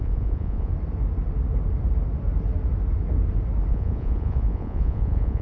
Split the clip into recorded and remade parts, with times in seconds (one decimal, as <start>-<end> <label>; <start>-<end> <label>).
0.0-0.7 remade; 0.7-3.7 recorded; 3.7-5.4 remade